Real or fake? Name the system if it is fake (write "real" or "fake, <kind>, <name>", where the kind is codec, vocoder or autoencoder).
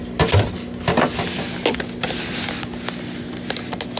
real